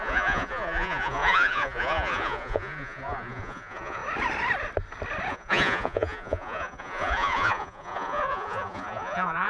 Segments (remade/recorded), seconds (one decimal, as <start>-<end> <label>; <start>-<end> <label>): 0.0-4.0 remade; 4.0-5.3 recorded; 5.3-9.5 remade